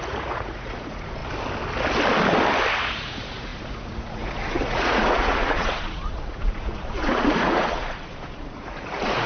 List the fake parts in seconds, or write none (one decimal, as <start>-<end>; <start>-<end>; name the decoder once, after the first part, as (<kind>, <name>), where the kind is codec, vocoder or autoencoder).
0.0-1.2 (vocoder, Vocos); 2.7-9.3